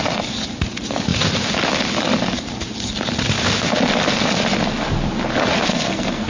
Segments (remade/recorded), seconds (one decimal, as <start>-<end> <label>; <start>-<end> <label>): 0.0-5.7 recorded; 5.7-6.3 remade